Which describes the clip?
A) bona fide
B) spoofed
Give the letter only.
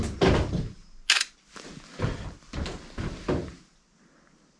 A